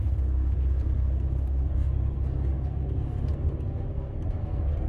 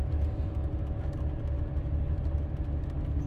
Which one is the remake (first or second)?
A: first